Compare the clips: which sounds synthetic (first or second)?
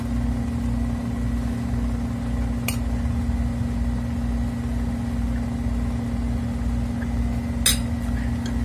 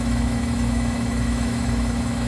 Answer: second